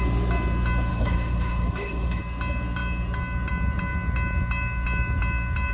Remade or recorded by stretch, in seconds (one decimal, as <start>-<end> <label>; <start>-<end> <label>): 0.0-0.9 recorded; 0.9-2.2 remade; 2.2-5.7 recorded